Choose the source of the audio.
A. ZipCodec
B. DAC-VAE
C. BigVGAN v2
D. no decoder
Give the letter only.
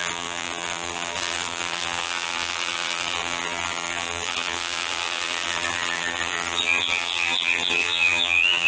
C